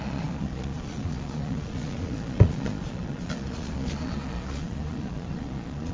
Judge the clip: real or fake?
fake